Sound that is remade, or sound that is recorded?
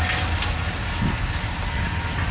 recorded